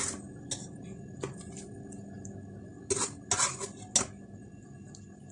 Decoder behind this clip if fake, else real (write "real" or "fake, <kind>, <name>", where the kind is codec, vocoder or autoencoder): real